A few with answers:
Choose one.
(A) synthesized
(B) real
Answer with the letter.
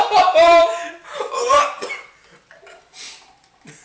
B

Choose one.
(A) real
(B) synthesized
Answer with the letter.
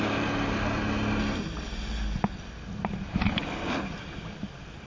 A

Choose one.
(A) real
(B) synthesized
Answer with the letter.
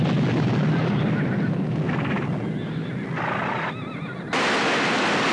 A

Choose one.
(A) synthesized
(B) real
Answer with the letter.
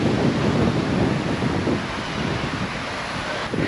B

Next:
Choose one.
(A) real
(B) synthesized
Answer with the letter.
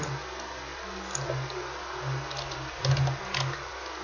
A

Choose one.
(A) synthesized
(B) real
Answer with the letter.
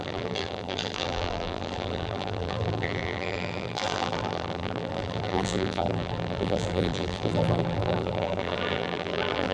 A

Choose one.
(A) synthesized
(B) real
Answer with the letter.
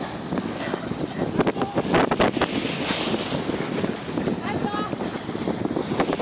B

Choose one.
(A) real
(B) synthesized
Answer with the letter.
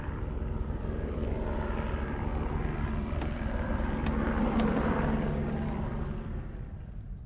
B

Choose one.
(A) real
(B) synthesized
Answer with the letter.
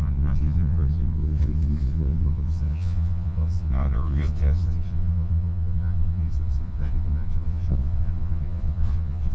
B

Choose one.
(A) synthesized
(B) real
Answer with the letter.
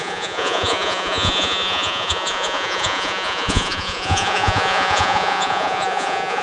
A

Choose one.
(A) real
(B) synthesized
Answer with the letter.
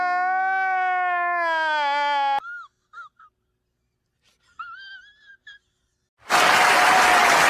A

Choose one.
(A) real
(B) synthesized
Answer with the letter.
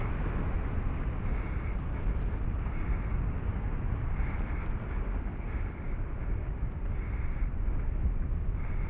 A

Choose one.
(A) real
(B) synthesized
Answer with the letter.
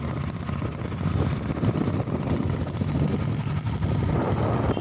A